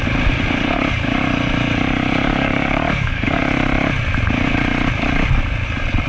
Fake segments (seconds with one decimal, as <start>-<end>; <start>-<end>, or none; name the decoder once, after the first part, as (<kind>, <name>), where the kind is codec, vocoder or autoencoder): 2.3-3.4 (codec, DAC)